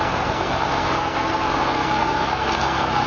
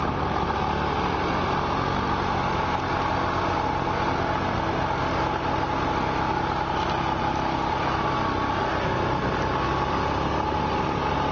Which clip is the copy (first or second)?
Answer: first